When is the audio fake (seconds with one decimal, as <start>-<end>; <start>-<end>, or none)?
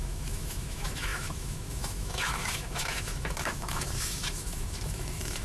0.0-5.4